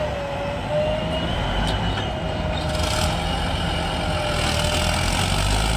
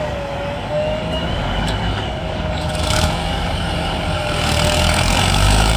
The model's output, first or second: second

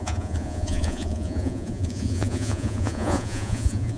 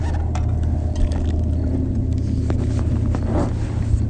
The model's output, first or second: first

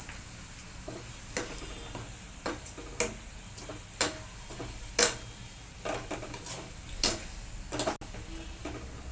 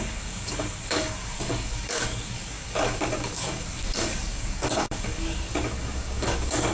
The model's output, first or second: second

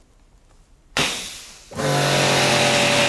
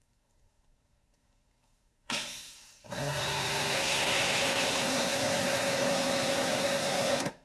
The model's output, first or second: second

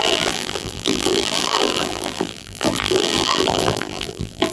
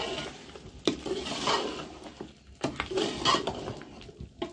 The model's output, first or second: first